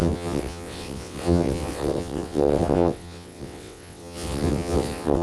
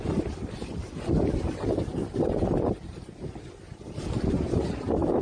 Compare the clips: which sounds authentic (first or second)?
second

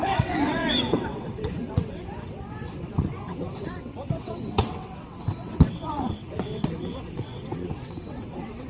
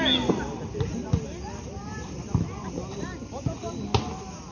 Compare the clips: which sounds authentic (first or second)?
second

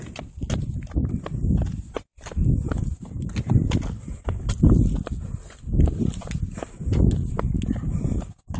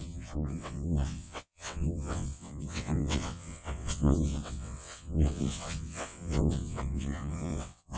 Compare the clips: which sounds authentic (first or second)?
first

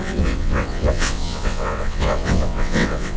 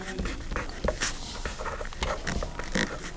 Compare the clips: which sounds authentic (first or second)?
second